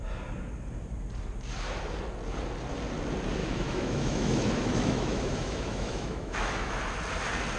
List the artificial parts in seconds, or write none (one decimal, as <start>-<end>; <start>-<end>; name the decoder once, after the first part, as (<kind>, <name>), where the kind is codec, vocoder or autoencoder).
3.4-6.8 (autoencoder, DAC-VAE)